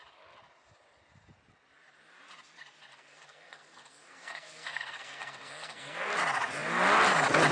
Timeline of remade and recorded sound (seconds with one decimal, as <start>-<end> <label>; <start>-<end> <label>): 0.0-2.9 recorded; 2.9-6.1 remade; 6.1-7.5 recorded